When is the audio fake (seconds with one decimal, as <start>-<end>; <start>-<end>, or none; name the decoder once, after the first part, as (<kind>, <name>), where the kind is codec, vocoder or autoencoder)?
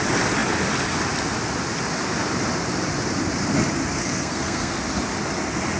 4.0-4.8 (codec, SNAC)